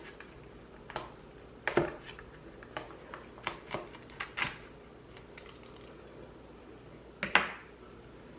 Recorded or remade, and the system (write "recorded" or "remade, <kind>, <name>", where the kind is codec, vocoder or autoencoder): recorded